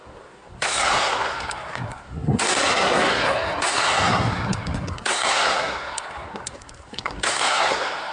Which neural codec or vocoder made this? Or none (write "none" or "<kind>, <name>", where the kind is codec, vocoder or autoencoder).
codec, SNAC